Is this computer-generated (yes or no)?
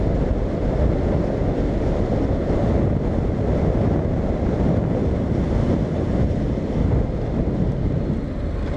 no